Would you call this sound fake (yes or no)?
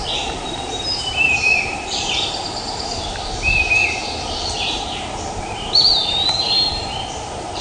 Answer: yes